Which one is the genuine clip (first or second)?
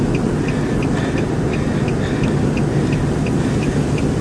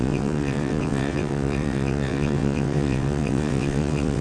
first